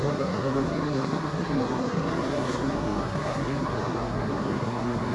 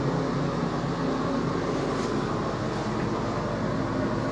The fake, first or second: first